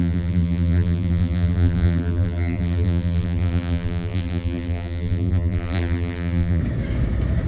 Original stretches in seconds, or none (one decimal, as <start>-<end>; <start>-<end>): 6.6-7.5